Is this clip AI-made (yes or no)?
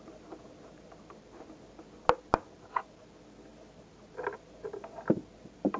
no